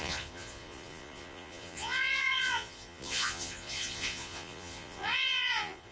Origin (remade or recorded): remade